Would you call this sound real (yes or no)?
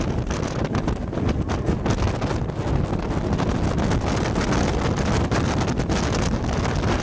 yes